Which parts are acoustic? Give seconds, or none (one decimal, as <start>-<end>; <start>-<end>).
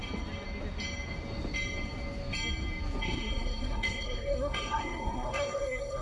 0.0-3.0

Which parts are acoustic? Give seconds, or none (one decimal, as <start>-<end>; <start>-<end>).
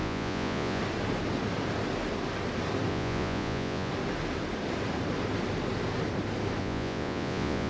0.8-2.9; 3.9-6.6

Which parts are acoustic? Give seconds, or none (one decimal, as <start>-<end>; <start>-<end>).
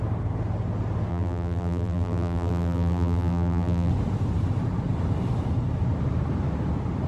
0.0-1.1; 3.9-7.1